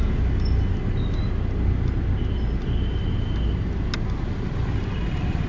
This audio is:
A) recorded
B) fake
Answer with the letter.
A